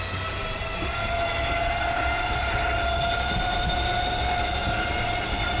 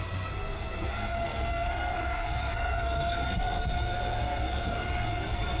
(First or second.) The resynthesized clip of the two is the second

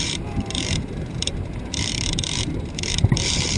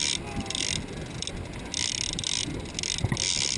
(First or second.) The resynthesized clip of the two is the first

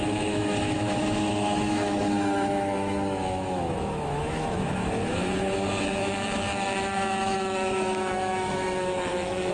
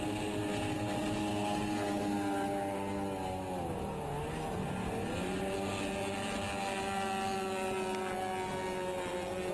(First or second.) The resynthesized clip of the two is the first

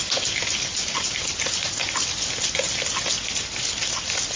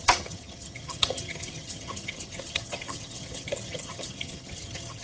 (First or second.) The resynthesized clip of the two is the second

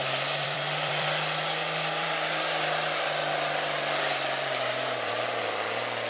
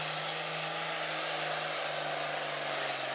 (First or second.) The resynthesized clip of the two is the first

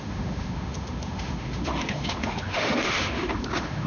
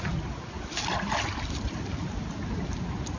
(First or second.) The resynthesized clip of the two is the first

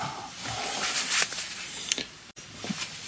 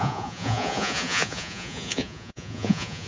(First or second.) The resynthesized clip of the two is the second